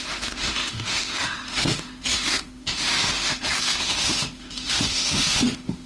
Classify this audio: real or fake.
fake